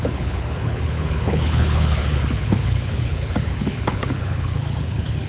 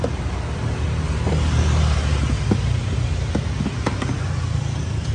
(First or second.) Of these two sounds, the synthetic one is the first